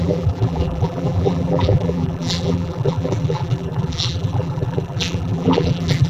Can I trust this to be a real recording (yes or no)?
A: no